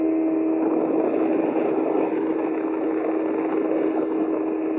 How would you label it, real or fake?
real